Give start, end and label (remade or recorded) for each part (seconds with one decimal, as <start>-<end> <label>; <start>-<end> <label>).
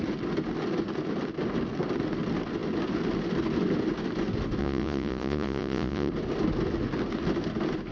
0.0-4.6 recorded; 4.6-6.1 remade; 6.1-7.9 recorded